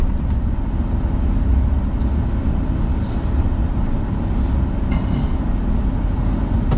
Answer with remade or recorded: recorded